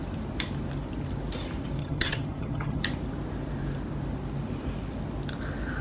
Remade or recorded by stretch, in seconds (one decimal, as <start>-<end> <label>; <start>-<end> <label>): 0.0-1.8 recorded; 1.8-2.8 remade; 2.8-5.8 recorded